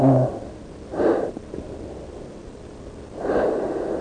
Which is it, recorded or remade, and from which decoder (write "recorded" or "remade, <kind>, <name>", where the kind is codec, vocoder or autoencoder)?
recorded